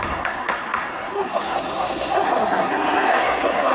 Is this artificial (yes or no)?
yes